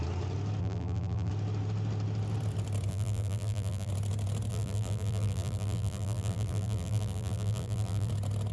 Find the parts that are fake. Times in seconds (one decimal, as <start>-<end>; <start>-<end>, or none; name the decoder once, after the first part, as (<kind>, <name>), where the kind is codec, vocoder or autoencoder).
0.6-1.3 (vocoder, BigVGAN v2); 2.9-3.9; 4.5-8.1